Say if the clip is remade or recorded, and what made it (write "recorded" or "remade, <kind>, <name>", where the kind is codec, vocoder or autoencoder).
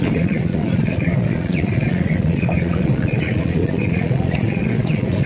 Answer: remade, vocoder, Vocos